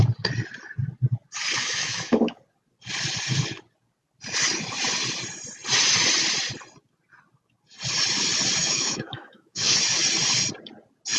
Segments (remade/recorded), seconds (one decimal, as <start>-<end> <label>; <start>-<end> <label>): 0.0-1.6 recorded; 1.6-2.4 remade; 2.4-8.6 recorded; 8.6-9.8 remade; 9.8-11.2 recorded

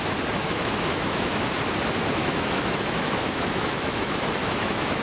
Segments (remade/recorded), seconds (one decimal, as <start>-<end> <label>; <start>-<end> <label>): 0.0-0.4 recorded; 0.4-1.4 remade; 1.4-2.2 recorded; 2.2-5.0 remade

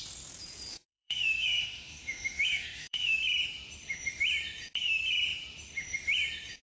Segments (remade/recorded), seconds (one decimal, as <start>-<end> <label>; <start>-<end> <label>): 0.0-0.7 recorded; 0.7-3.2 remade; 3.2-6.7 recorded

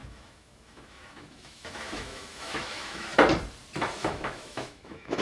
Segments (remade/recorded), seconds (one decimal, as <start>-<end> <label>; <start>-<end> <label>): 0.0-3.1 remade; 3.1-4.0 recorded; 4.0-5.2 remade

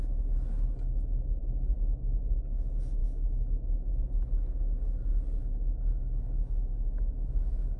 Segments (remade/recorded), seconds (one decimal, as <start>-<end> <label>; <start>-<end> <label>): 0.0-1.4 recorded; 1.4-2.2 remade; 2.2-3.0 recorded; 3.0-3.9 remade; 3.9-5.4 recorded; 5.4-7.8 remade

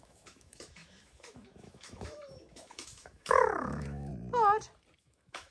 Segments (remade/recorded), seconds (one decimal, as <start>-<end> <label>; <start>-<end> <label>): 0.0-4.1 remade; 4.1-5.0 recorded; 5.0-5.5 remade

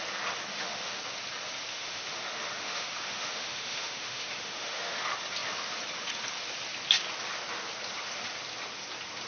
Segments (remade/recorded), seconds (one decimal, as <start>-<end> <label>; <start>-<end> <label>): 0.0-0.5 recorded; 0.5-1.0 remade; 1.0-1.7 recorded; 1.7-5.0 remade; 5.0-9.3 recorded